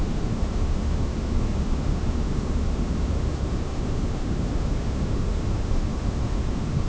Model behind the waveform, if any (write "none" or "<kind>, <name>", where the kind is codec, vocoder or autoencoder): autoencoder, DAC-VAE